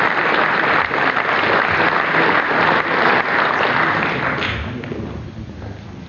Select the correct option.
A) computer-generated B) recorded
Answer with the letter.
B